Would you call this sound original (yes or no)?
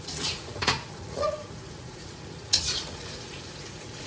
no